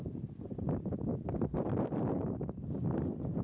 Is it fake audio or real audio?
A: real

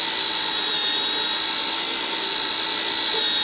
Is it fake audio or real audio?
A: real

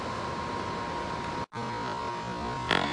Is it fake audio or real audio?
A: real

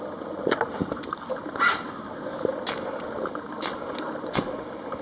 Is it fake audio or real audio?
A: real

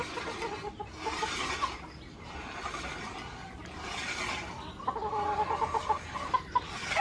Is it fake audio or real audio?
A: real